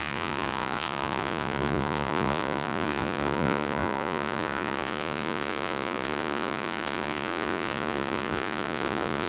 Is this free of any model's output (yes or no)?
no